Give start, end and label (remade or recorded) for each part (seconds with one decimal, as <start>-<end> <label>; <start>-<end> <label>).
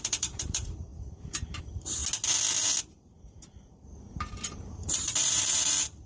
0.0-2.0 remade; 2.0-2.9 recorded; 2.9-6.1 remade